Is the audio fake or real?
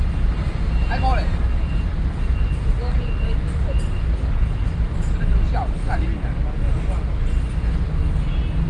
real